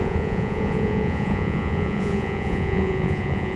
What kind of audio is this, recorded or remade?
remade